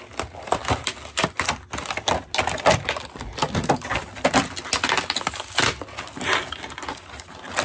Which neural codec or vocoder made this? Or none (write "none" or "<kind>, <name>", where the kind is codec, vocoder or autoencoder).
none